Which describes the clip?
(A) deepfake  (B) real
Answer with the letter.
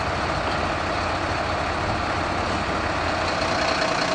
B